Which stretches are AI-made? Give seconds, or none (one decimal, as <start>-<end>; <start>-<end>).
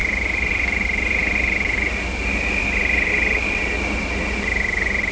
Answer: none